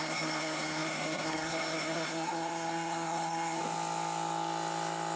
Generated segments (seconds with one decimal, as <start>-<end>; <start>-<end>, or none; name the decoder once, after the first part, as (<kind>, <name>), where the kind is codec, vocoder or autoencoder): 0.0-3.6 (codec, SNAC)